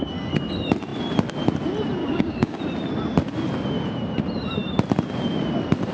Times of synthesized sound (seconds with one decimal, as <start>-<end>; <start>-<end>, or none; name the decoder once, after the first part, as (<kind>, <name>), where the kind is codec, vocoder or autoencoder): 2.0-2.6 (codec, DAC)